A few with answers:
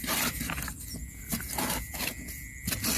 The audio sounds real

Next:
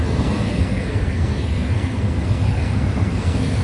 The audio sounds fake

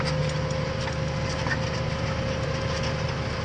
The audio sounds real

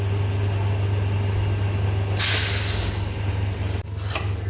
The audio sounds real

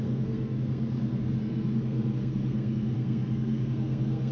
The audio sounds fake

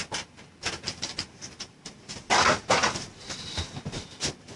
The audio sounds real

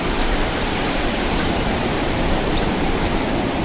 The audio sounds fake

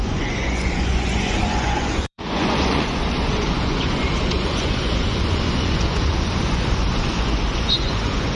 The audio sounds fake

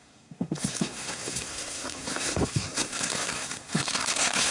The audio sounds fake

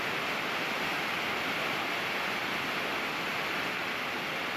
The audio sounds real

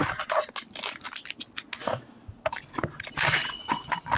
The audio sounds real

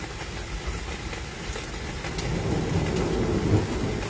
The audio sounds real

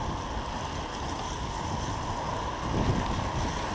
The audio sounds real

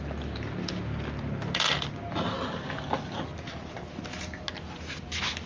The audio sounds real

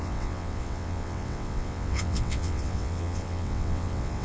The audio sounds fake